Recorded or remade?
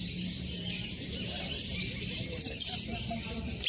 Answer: remade